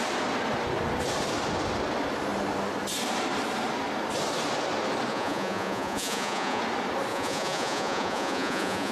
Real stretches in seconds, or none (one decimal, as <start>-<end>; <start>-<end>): 0.0-5.1; 6.6-7.1